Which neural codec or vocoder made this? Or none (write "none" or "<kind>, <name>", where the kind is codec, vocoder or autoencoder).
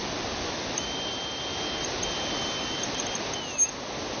none